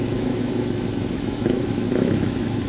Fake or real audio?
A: fake